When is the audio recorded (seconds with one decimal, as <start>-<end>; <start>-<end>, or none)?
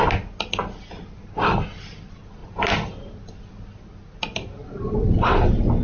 0.0-4.6